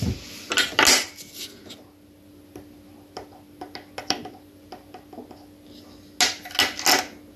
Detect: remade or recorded recorded